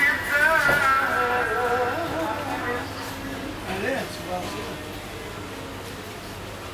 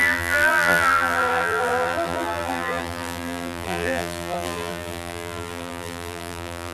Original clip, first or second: first